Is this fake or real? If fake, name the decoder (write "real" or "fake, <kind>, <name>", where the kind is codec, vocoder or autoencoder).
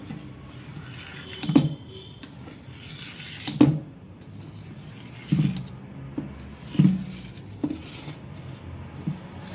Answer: real